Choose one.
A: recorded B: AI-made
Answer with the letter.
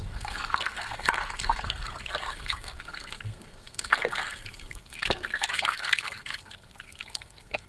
B